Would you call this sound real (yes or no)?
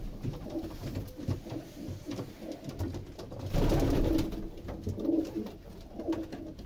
yes